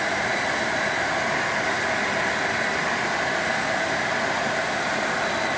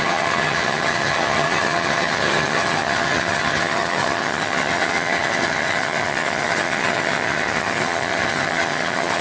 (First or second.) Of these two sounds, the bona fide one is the first